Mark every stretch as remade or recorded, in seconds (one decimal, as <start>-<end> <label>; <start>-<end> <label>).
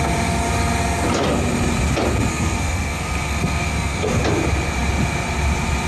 0.0-2.3 recorded; 2.3-4.2 remade; 4.2-5.9 recorded